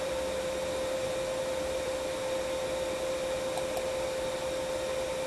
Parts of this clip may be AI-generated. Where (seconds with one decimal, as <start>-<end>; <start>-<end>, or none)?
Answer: 0.0-1.9